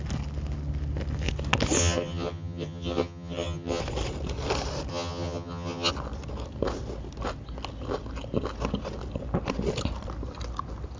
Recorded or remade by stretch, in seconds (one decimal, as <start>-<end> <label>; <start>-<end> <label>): 0.0-1.8 recorded; 1.8-3.8 remade; 3.8-4.9 recorded; 4.9-5.9 remade; 5.9-11.0 recorded